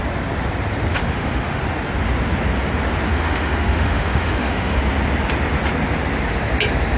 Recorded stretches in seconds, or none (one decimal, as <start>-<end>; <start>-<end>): 0.0-1.0; 1.6-3.1; 4.8-7.0